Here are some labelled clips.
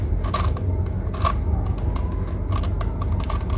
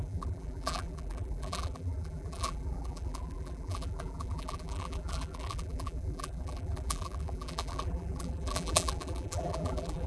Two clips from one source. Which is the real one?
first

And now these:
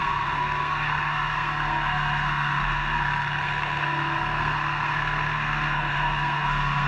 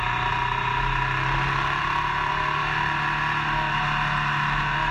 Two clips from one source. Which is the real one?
second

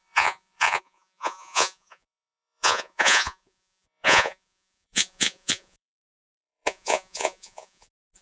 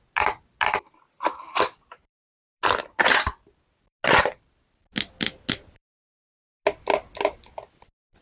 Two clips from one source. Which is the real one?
second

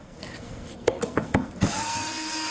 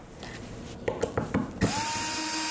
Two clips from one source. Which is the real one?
second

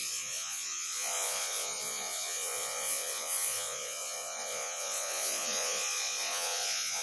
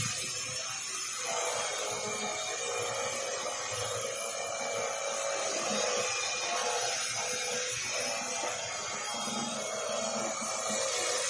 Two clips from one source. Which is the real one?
second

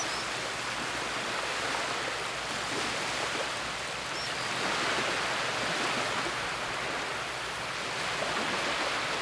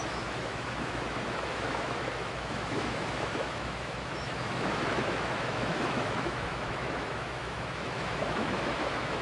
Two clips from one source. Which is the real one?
first